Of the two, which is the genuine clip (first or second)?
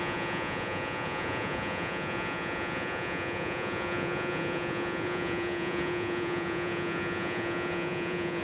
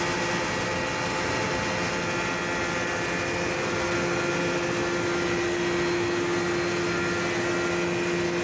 second